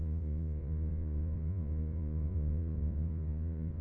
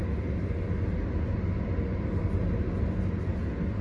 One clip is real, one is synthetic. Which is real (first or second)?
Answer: second